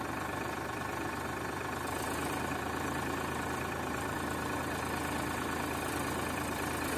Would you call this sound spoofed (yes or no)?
yes